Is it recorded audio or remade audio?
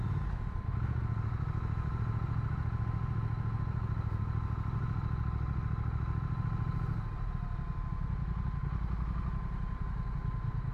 recorded